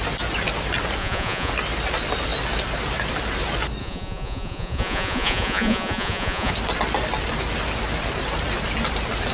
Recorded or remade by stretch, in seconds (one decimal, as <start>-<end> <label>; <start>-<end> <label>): 0.0-1.0 recorded; 1.0-1.5 remade; 1.5-3.8 recorded; 3.8-6.5 remade; 6.5-9.3 recorded